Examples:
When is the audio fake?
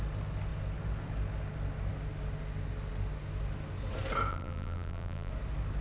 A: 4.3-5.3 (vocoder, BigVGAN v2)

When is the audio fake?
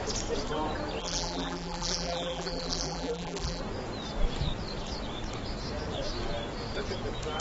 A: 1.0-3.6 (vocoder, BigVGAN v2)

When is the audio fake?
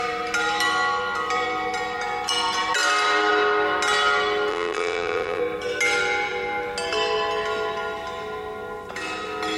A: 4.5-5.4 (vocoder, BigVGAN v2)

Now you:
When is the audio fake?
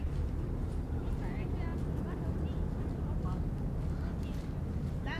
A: 0.0-1.7 (vocoder, BigVGAN v2); 4.6-5.2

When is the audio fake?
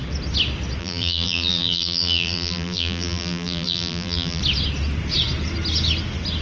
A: 0.8-4.4 (vocoder, BigVGAN v2)